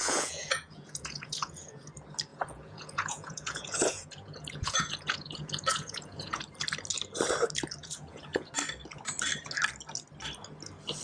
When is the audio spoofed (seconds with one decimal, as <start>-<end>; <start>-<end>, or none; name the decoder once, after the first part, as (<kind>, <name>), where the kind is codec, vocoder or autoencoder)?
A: 0.0-1.9 (vocoder, Vocos); 2.3-6.4; 7.8-8.5